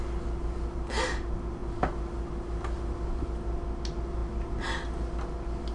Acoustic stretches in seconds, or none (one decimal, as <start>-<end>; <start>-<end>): 0.0-5.7